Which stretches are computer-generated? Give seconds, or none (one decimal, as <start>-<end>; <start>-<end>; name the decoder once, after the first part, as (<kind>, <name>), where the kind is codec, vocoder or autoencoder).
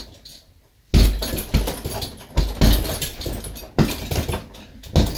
none